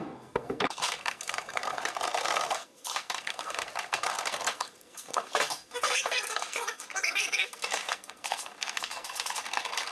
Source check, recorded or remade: remade